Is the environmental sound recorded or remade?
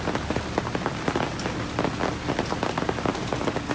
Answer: recorded